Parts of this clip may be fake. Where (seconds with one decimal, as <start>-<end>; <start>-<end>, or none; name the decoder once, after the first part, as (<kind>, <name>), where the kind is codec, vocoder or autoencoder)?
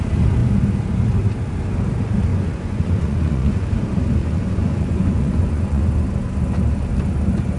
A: 2.3-3.7 (vocoder, Vocos); 4.2-5.9